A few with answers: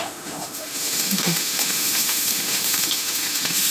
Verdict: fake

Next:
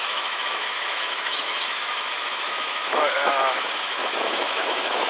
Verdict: fake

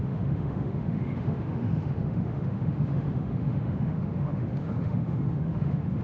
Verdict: fake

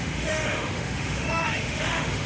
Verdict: fake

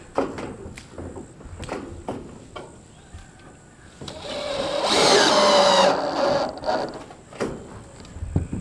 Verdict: real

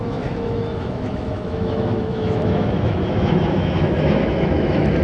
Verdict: fake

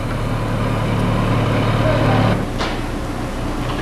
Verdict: real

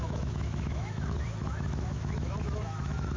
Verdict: fake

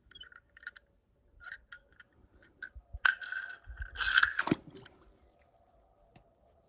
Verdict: real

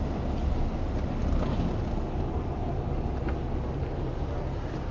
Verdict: real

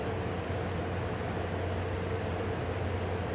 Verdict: real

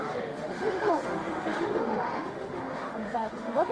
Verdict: fake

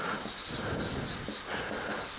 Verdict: real